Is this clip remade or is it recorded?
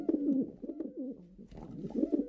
recorded